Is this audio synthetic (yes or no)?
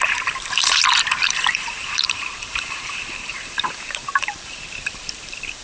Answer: yes